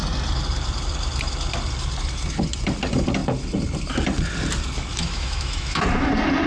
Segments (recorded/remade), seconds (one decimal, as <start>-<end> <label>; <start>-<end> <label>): 0.0-4.9 recorded; 4.9-5.8 remade; 5.8-6.5 recorded